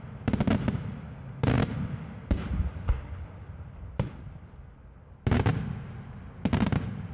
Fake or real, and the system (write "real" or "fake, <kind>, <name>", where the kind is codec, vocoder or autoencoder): real